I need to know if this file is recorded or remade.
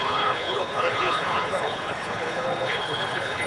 remade